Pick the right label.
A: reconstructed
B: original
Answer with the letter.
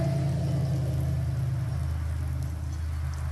B